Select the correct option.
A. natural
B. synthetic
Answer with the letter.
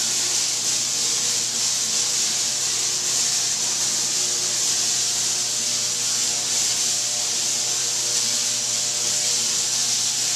A